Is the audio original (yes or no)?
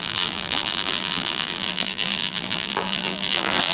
no